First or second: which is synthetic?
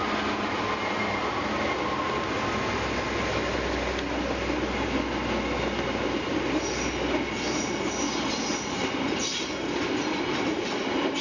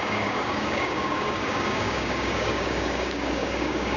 second